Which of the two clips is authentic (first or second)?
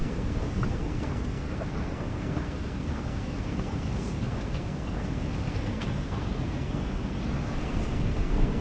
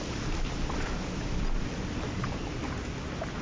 second